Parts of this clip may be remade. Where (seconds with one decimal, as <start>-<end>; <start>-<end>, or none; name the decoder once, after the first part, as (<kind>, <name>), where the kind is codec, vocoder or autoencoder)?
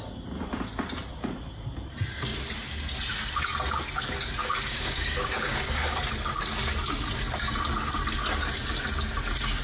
4.4-6.0 (codec, DAC)